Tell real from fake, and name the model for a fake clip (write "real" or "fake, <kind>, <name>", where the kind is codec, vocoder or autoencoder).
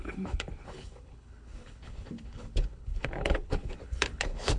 fake, codec, HILCodec